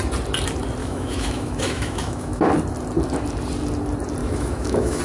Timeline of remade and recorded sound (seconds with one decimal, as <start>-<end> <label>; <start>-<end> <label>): 0.0-0.8 recorded; 0.8-2.5 remade; 2.5-4.2 recorded; 4.2-5.0 remade